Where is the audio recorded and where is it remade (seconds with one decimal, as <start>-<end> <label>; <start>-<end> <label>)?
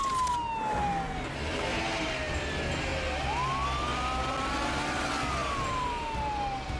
0.0-6.8 recorded